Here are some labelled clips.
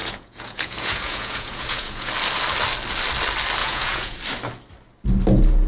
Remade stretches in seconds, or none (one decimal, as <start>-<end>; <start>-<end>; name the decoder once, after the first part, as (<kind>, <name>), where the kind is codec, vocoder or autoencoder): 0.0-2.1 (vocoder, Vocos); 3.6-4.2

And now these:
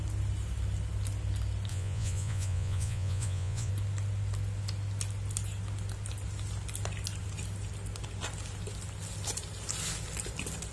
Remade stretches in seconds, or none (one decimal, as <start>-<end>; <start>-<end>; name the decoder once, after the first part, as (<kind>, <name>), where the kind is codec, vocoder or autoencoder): 1.7-3.7 (vocoder, Vocos)

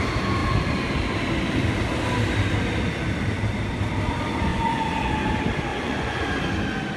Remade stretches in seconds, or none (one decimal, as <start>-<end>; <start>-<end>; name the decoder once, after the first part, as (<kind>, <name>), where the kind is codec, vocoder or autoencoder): 4.5-5.2 (vocoder, Vocos); 5.7-6.3